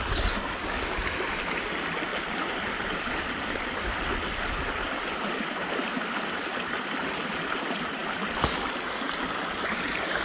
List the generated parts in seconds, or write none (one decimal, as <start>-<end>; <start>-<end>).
2.1-5.7